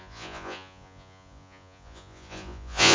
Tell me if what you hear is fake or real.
fake